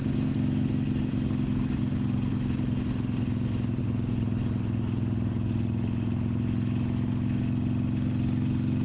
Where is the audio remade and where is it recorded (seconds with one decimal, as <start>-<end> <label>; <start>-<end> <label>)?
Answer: 0.0-8.8 recorded